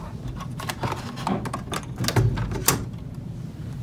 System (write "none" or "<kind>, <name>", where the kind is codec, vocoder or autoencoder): none